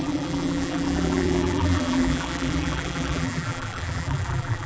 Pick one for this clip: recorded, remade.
remade